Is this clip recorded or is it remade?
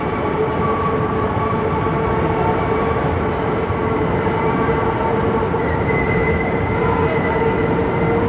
recorded